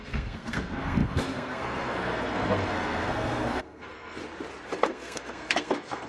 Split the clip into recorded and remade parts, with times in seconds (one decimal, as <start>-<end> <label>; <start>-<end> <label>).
0.0-4.2 remade; 4.2-4.8 recorded; 4.8-6.1 remade